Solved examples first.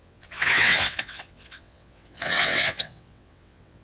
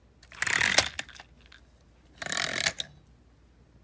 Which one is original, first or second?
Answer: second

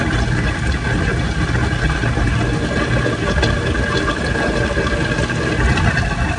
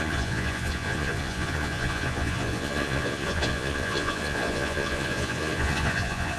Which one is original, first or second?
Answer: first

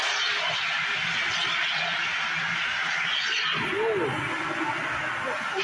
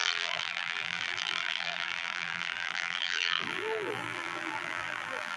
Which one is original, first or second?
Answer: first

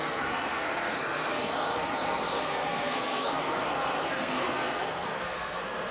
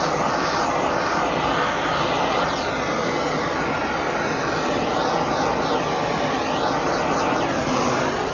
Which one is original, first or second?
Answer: second